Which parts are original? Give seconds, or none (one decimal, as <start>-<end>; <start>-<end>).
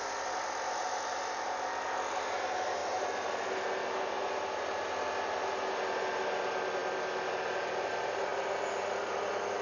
0.0-9.6